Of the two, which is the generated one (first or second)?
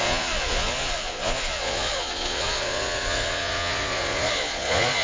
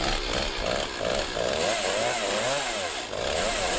first